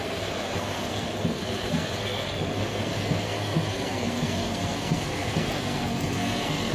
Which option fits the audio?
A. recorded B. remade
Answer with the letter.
B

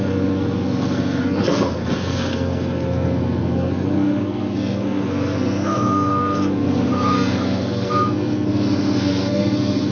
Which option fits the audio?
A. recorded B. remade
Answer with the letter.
B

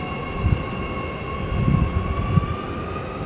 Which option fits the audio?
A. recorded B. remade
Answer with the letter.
A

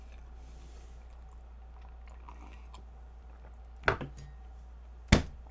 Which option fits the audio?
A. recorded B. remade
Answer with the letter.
A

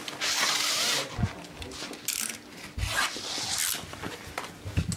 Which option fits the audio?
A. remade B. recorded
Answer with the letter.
B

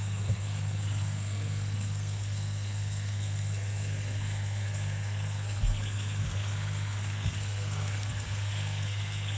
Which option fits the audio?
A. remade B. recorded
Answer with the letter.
A